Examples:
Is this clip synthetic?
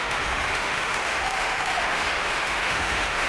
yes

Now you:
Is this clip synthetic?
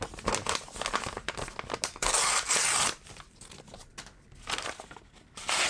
no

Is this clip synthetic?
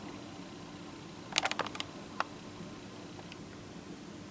no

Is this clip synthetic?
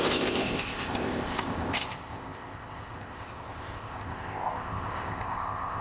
yes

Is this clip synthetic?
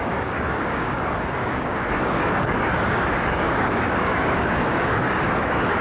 yes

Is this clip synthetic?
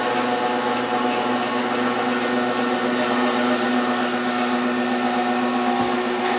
no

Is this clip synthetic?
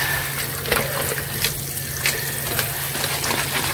no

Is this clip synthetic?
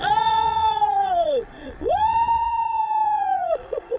yes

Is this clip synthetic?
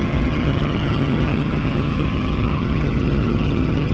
yes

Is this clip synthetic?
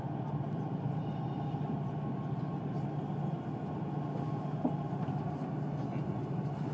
no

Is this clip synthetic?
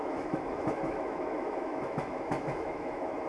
yes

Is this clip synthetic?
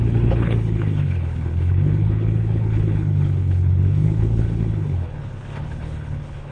yes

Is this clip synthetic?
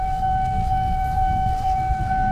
yes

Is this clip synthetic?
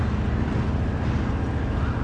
no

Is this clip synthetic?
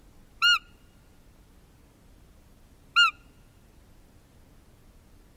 no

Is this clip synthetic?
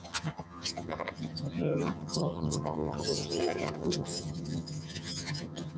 yes